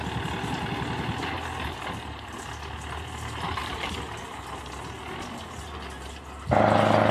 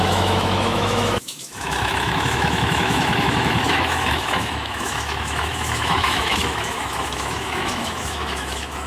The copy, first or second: second